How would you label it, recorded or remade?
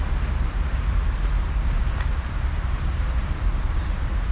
remade